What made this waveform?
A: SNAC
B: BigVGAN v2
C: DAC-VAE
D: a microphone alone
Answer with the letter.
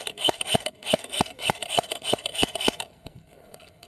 A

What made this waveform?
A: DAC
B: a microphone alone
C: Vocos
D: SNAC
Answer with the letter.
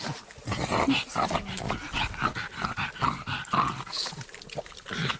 B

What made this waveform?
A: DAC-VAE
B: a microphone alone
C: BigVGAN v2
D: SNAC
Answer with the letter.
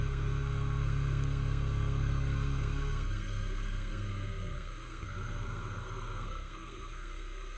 D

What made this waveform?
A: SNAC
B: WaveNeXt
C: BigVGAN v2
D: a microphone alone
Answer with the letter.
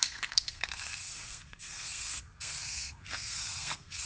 A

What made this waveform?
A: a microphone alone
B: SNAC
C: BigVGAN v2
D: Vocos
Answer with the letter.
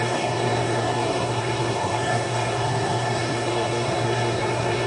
B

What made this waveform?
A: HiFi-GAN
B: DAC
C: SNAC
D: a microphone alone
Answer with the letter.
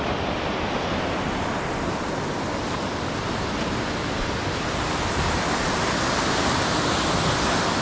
D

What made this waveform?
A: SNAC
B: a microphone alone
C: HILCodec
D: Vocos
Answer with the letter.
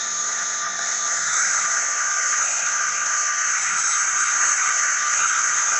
A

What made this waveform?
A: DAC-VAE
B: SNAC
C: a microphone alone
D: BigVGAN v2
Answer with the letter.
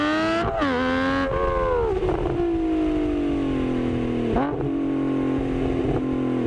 C